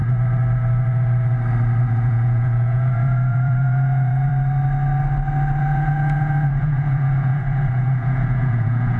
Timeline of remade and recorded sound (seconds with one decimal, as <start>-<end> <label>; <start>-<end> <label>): 0.0-1.8 recorded; 1.8-4.3 remade; 4.3-5.6 recorded; 5.6-9.0 remade